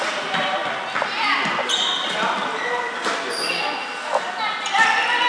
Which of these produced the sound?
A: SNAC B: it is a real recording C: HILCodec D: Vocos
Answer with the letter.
B